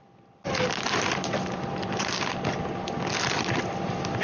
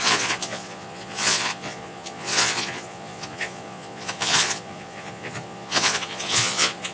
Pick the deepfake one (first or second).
second